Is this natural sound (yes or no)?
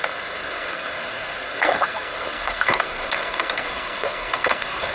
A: no